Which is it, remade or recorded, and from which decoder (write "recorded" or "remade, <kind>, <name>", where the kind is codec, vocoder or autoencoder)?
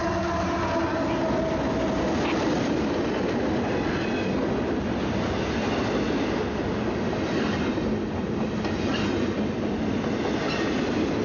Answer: recorded